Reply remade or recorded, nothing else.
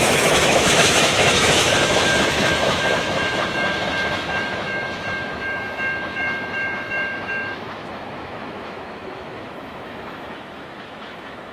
remade